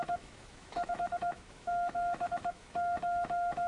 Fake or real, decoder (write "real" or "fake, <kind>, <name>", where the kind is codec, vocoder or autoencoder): fake, autoencoder, DAC-VAE